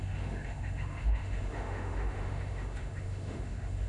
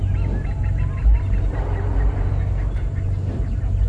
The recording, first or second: second